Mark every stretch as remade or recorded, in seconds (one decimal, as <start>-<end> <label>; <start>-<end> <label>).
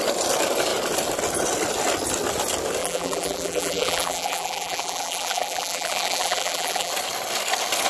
0.0-2.8 recorded; 2.8-6.9 remade; 6.9-7.9 recorded